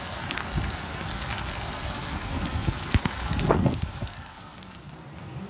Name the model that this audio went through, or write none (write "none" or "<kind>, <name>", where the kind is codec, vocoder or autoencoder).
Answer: codec, SNAC